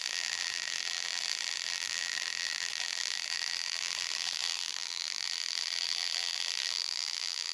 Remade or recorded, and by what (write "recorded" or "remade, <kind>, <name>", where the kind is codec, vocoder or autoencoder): remade, vocoder, BigVGAN v2